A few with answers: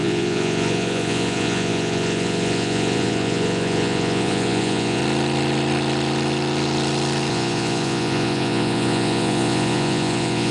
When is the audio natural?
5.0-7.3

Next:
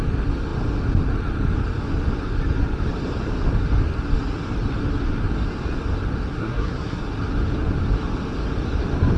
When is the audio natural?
0.0-6.3; 7.0-9.2

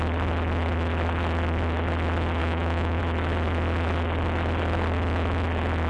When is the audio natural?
0.0-2.4; 3.0-5.9

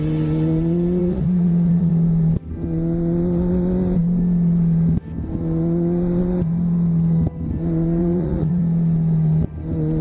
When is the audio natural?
0.0-1.0; 1.9-8.0; 8.6-10.0